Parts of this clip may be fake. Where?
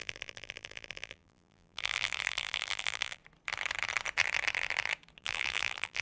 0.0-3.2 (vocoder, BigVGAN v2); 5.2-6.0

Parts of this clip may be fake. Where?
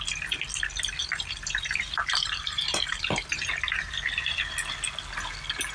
1.0-4.4 (vocoder, BigVGAN v2)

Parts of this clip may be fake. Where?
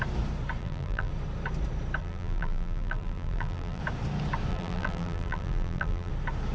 0.6-1.1 (vocoder, BigVGAN v2); 2.0-3.8; 4.5-6.1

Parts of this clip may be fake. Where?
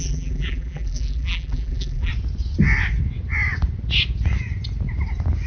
0.0-2.1 (vocoder, BigVGAN v2)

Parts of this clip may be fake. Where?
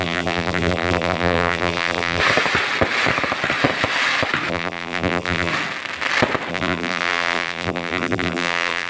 0.0-2.2 (vocoder, BigVGAN v2); 4.5-5.5; 6.5-8.9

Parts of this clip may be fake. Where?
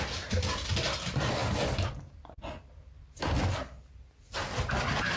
none